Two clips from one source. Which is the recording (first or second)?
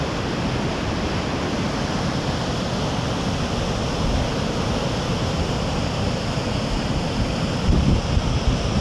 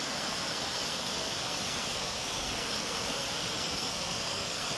first